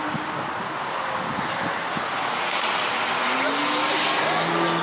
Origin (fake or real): real